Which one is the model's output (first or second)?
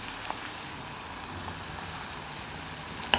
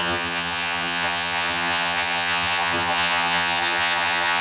second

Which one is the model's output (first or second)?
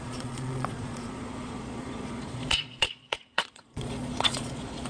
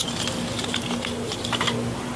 first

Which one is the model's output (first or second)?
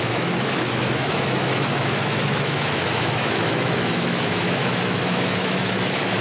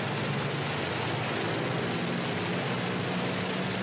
first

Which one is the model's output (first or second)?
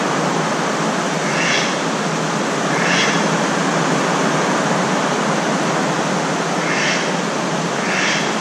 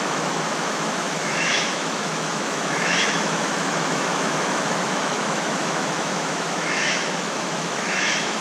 second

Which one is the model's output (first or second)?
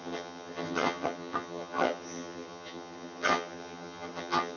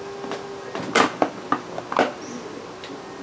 first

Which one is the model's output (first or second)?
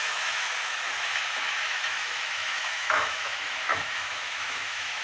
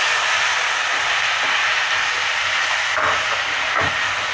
first